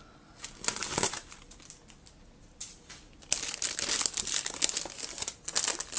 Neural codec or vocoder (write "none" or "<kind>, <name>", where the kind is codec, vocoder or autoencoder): none